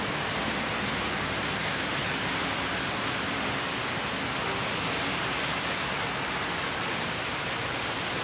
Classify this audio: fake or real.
real